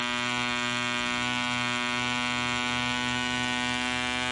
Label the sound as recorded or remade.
recorded